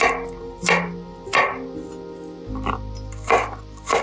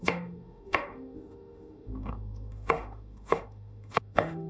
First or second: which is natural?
first